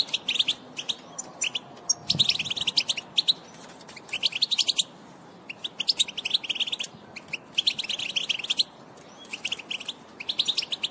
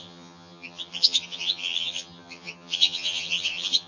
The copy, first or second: second